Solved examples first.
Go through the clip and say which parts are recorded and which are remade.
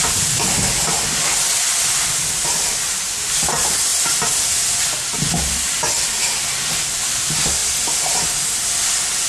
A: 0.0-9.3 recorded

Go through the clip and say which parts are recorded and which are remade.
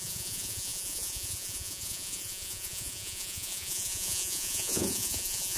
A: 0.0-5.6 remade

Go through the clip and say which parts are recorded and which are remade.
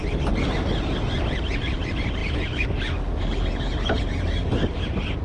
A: 0.0-5.2 recorded